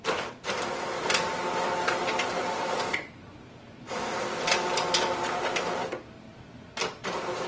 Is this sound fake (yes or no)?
no